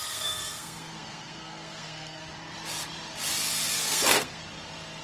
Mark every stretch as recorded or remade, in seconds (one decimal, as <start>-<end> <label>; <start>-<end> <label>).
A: 0.0-2.2 remade; 2.2-3.9 recorded; 3.9-4.4 remade; 4.4-5.0 recorded